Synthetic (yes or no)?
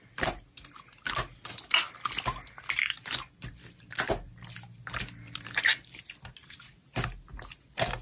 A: no